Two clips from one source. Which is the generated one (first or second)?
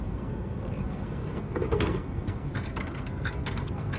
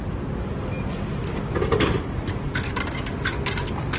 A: first